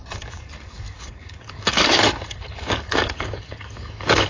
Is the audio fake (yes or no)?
yes